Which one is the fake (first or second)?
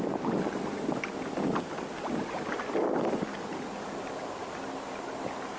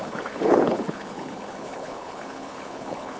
second